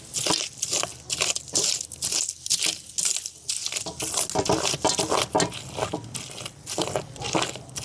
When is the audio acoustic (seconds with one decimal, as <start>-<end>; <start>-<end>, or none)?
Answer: 0.0-7.8

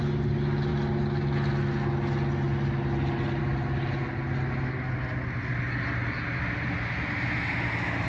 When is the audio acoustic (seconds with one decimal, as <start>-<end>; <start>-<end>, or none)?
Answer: 0.0-8.1

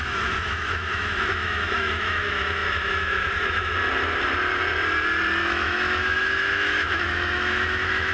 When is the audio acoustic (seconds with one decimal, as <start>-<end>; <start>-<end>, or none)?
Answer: 3.7-5.4

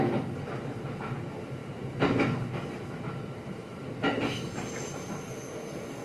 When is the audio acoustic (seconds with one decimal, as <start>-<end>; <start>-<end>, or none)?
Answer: 0.0-6.0

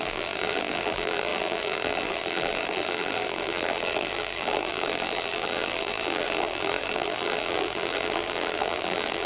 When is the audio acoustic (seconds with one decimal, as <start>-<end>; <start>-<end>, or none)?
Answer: none

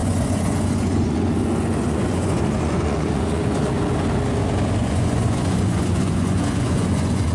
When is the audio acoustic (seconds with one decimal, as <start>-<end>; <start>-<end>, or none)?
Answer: 3.7-4.8

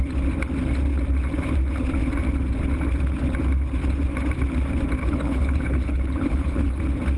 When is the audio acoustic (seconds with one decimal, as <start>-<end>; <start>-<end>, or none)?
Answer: 0.0-5.0; 6.8-7.2

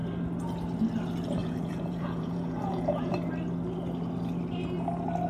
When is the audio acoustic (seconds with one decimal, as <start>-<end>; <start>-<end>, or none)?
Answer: 0.0-1.4; 3.1-5.3